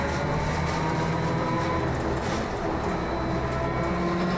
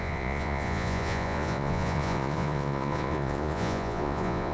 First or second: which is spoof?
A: second